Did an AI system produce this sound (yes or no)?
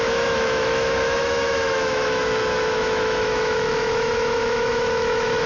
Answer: yes